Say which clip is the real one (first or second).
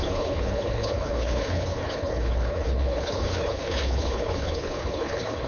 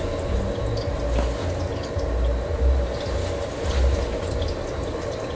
second